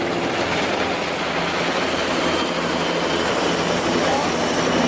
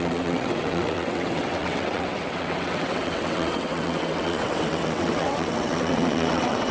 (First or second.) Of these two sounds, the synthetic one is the second